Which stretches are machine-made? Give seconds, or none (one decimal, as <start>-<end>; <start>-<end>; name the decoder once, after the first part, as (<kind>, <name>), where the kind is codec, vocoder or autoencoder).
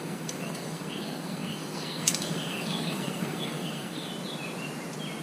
0.0-4.1 (codec, SNAC)